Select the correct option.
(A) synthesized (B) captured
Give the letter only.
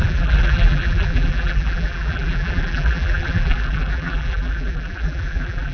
A